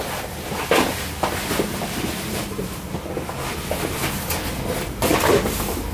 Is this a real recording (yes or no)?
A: yes